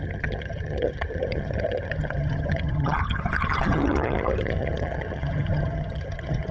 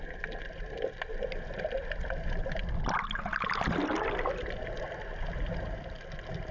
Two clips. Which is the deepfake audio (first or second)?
first